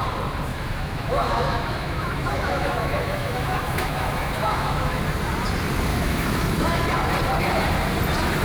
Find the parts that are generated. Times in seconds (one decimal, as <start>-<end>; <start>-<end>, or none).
0.5-5.0; 5.9-6.8